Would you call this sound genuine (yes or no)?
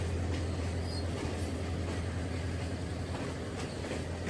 yes